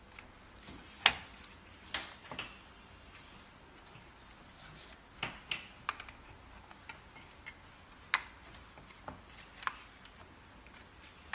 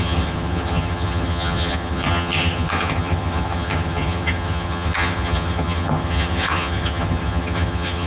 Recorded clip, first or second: first